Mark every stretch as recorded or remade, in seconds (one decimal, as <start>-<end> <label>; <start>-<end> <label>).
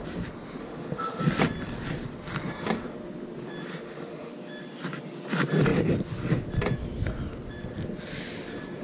0.0-0.6 recorded; 0.6-1.2 remade; 1.2-3.7 recorded; 3.7-4.3 remade; 4.3-8.8 recorded